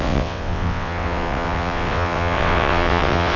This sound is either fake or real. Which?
fake